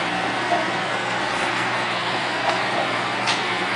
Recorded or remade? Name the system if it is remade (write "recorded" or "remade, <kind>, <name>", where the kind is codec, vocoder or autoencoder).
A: remade, codec, SNAC